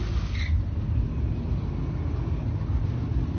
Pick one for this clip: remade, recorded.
recorded